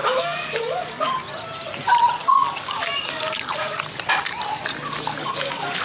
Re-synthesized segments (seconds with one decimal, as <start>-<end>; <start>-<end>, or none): 0.0-1.1; 2.2-3.2; 5.2-5.8